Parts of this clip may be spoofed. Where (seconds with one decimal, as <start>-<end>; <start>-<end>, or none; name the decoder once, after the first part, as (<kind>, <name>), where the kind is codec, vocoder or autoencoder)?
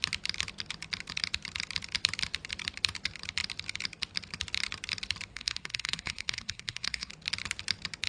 5.3-7.1 (codec, SNAC)